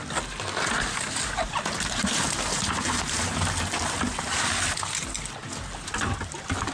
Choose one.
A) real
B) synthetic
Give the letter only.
A